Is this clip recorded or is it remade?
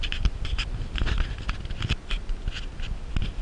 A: recorded